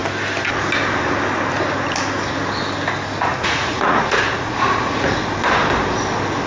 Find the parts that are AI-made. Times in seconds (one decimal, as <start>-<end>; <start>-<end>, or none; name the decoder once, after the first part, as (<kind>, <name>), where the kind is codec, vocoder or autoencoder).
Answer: 3.3-5.3 (vocoder, Vocos)